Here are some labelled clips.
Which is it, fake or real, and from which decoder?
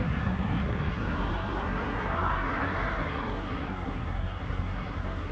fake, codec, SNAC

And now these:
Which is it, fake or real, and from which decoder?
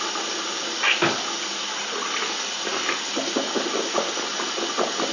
real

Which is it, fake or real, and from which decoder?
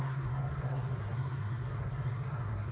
fake, codec, SNAC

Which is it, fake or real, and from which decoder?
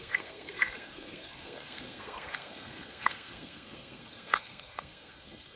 fake, codec, SNAC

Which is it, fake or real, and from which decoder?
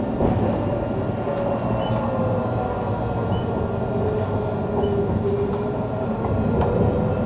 real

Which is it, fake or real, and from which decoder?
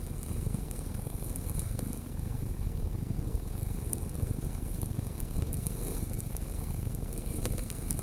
fake, codec, SNAC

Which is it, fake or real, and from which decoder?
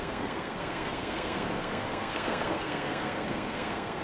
fake, codec, SNAC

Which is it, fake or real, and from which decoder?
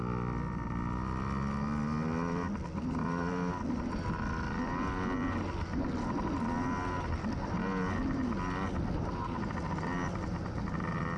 real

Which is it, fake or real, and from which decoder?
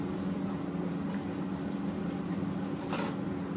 real